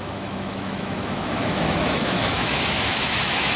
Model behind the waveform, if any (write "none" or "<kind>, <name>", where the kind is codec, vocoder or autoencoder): autoencoder, DAC-VAE